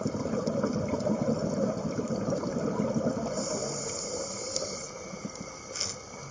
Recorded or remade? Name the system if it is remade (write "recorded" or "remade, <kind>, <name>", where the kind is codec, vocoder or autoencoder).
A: recorded